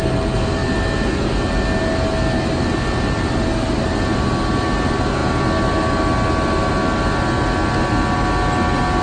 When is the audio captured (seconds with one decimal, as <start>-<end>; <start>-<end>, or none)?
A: 0.0-9.0